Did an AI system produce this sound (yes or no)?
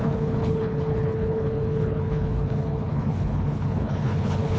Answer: yes